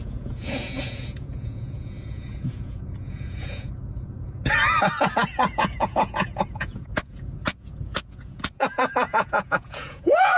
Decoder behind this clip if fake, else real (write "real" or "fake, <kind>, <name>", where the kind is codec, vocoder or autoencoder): fake, vocoder, Vocos